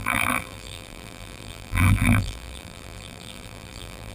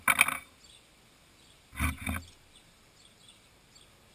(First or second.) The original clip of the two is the second